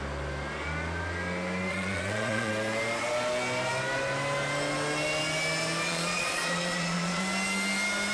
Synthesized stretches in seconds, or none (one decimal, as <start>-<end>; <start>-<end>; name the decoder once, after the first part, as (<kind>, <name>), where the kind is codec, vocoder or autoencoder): 1.7-2.5 (vocoder, Vocos); 5.9-7.2